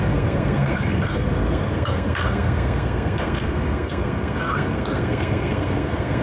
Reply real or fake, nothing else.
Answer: fake